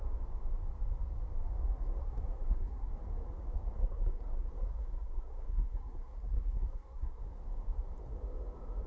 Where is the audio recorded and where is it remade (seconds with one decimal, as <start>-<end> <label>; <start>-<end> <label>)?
0.0-2.0 recorded; 2.0-2.9 remade; 2.9-3.8 recorded; 3.8-7.2 remade; 7.2-8.9 recorded